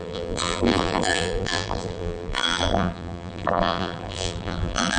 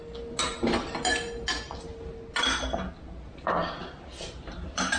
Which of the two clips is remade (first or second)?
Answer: first